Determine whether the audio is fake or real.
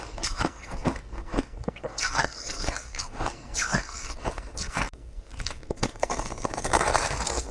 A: fake